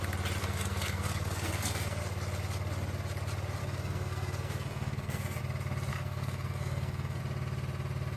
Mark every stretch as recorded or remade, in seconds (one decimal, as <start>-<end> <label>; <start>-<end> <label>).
0.0-0.4 recorded; 0.4-2.0 remade; 2.0-3.6 recorded; 3.6-5.4 remade; 5.4-5.9 recorded; 5.9-7.2 remade; 7.2-8.2 recorded

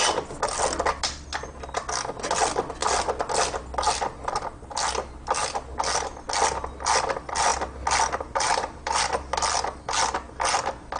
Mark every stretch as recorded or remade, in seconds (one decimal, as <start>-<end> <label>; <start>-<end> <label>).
0.0-11.0 recorded

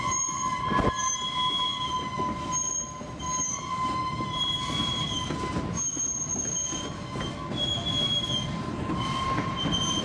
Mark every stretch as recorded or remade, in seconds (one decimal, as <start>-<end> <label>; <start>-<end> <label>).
0.0-10.0 recorded

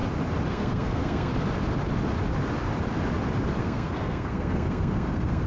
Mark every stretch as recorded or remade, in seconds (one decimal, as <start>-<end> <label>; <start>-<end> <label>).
0.0-0.5 recorded; 0.5-1.3 remade; 1.3-3.6 recorded; 3.6-5.5 remade

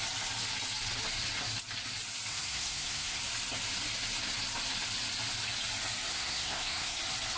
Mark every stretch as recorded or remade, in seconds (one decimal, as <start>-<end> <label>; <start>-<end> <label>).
0.0-2.3 recorded; 2.3-3.2 remade; 3.2-6.1 recorded; 6.1-7.0 remade; 7.0-7.4 recorded

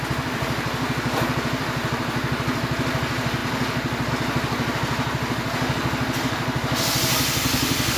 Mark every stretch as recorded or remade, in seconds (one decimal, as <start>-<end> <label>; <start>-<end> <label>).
0.0-8.0 recorded

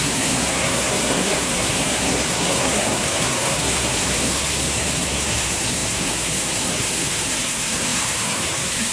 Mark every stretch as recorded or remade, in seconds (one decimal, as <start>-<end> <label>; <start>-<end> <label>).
0.0-8.9 remade